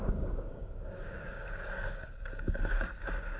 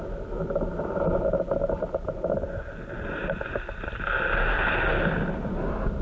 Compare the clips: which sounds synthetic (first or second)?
first